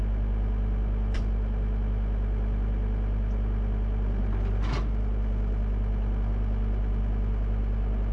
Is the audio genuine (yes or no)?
yes